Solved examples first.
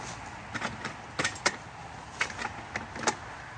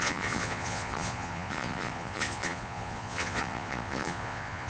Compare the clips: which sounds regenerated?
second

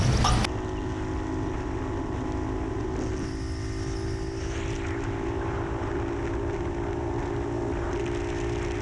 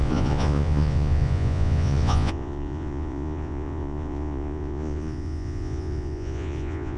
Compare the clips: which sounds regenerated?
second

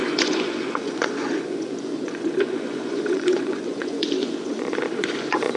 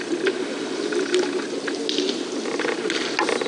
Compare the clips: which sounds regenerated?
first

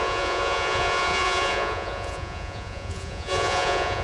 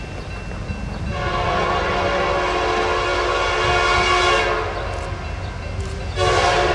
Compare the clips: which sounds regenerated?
first